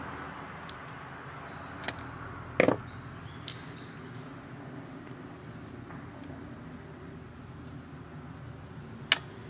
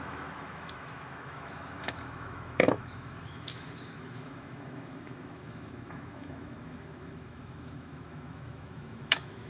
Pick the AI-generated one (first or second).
second